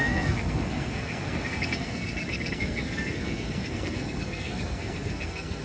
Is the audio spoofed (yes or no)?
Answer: yes